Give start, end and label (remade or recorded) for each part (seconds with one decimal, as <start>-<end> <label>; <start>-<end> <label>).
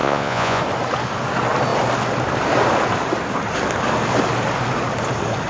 0.0-0.6 remade; 0.6-5.5 recorded